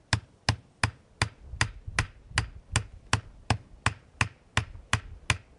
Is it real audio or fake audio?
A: real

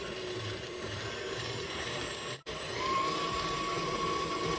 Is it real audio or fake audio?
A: fake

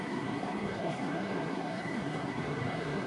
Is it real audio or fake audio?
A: fake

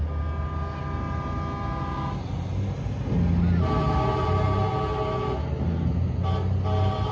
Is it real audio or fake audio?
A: real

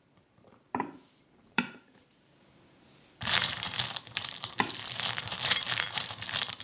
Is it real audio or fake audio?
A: fake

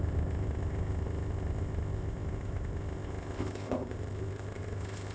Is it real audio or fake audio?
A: fake